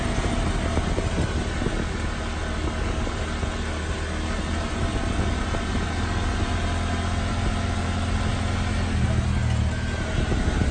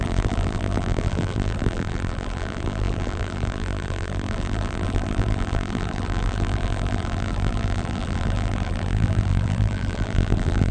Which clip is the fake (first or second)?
second